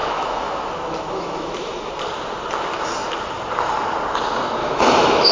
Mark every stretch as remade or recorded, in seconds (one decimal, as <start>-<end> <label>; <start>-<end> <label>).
0.0-1.9 remade; 1.9-4.6 recorded; 4.6-5.3 remade